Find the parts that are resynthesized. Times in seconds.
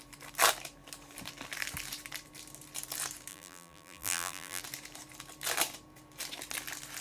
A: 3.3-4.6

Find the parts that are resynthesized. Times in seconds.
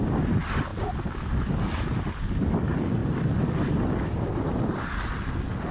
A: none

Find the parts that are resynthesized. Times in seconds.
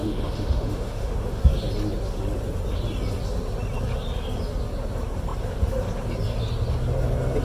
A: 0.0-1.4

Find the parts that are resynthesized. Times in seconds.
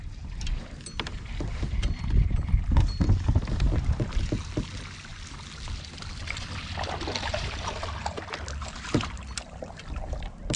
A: 0.6-4.4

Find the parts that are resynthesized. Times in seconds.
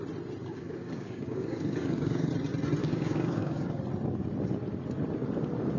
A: 0.4-2.3; 2.8-3.8